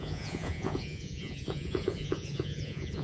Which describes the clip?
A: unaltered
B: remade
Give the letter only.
B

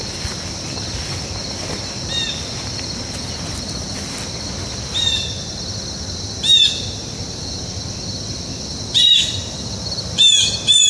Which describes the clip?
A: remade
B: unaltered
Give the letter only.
B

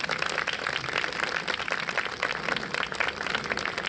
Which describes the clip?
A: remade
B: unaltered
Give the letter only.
B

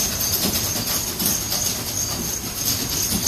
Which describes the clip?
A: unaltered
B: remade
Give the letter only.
A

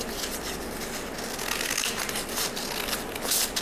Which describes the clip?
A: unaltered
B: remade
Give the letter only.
A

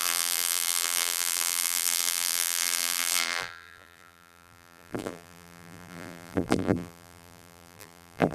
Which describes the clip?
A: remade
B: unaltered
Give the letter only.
A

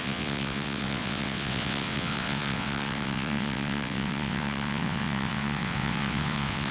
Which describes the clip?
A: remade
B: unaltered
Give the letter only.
A